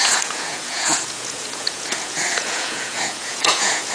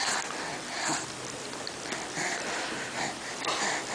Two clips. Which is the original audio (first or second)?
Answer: second